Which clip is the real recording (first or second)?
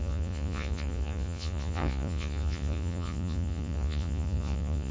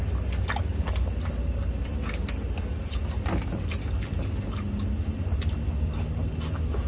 second